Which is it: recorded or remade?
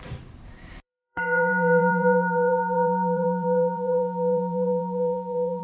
remade